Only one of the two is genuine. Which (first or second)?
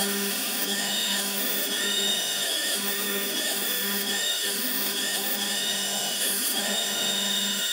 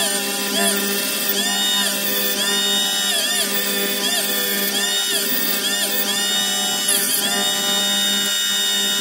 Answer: second